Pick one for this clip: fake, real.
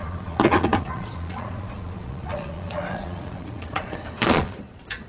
fake